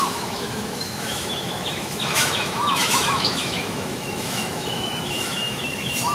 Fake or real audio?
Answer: fake